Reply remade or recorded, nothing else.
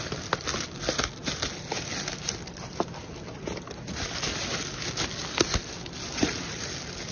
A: recorded